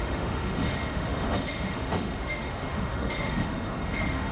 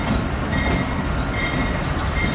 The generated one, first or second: first